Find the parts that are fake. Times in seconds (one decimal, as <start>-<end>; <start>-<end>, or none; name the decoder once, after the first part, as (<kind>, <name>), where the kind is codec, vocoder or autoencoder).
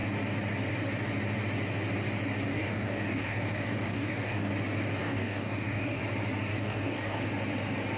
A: 2.5-4.5 (codec, DAC); 5.0-6.0; 6.5-7.2